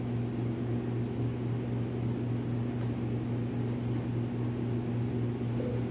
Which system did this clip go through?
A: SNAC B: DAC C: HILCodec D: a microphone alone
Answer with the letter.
D